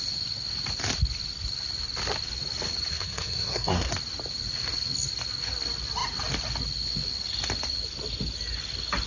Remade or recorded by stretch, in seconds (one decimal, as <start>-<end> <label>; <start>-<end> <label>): 0.0-2.9 recorded; 2.9-3.9 remade; 3.9-9.1 recorded

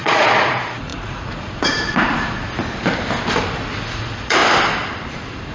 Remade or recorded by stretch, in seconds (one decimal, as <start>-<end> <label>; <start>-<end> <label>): 0.0-2.4 remade; 2.4-3.9 recorded; 3.9-4.4 remade; 4.4-5.5 recorded

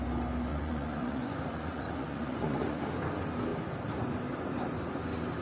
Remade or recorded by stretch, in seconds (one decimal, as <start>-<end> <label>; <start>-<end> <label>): 0.0-0.5 recorded; 0.5-2.8 remade; 2.8-5.4 recorded

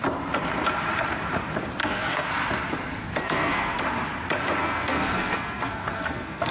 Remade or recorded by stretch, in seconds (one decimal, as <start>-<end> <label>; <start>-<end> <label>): 0.0-1.8 recorded; 1.8-2.3 remade; 2.3-3.0 recorded; 3.0-3.8 remade; 3.8-4.6 recorded; 4.6-6.5 remade

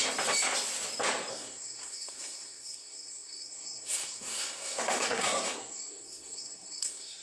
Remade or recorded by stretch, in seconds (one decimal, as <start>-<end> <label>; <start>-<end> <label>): 0.0-1.3 recorded; 1.3-7.2 remade

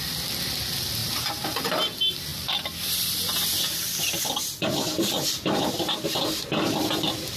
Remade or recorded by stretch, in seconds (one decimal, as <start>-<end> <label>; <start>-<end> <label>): 0.0-1.0 recorded; 1.0-1.7 remade; 1.7-2.3 recorded; 2.3-6.1 remade; 6.1-7.4 recorded